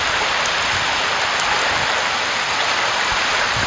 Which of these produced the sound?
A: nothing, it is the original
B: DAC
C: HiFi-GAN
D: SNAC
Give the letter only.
A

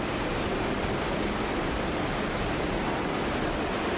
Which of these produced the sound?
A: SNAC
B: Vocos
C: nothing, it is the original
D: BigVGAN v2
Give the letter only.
C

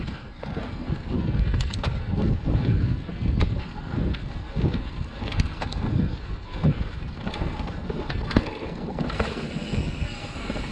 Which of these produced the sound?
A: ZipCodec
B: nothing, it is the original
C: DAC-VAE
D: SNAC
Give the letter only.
D